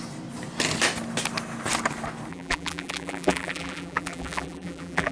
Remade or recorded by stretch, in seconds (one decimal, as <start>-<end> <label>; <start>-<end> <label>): 0.0-2.3 recorded; 2.3-5.1 remade